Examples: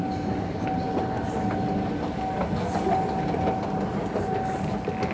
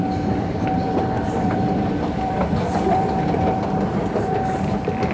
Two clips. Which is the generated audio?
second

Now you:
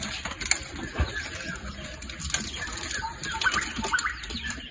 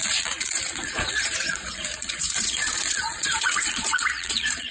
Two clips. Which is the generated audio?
second